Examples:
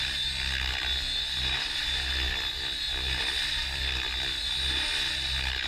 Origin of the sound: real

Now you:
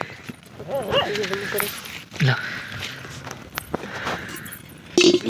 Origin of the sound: real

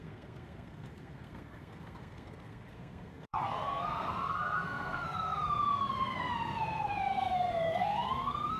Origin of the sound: fake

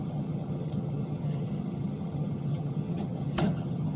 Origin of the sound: fake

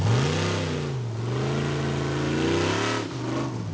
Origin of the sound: real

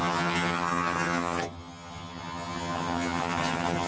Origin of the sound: fake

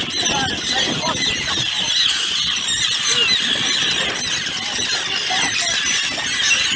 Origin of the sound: real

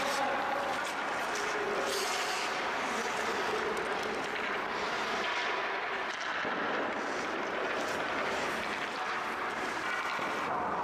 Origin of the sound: real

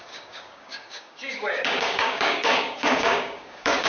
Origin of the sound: fake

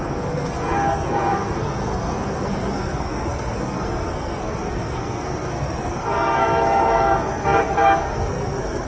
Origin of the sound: fake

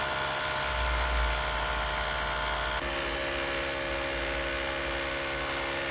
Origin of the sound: real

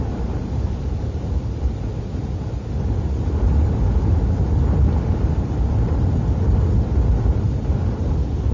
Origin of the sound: real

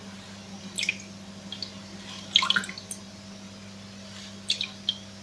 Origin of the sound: real